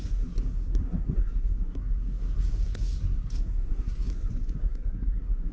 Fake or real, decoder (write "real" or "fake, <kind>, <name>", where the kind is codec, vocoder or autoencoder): fake, codec, SNAC